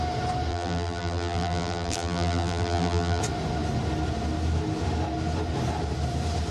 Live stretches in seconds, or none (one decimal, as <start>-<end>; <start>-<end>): 0.0-0.5; 3.2-6.5

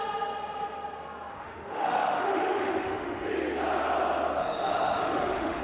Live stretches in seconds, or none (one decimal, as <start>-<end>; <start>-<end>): 0.0-1.3; 3.3-4.4

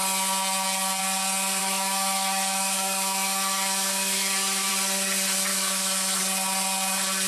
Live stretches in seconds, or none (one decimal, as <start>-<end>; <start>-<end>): 0.0-1.6; 4.7-5.5; 6.2-7.3